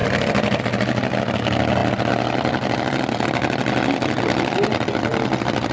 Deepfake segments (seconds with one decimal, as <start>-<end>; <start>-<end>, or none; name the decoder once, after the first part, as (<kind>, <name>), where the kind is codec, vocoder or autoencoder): none